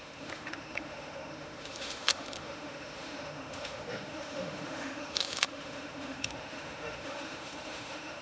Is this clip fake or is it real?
fake